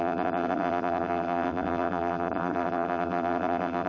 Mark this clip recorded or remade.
remade